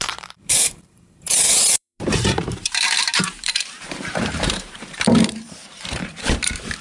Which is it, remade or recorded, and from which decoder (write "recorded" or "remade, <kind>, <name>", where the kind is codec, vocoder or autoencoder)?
remade, vocoder, BigVGAN v2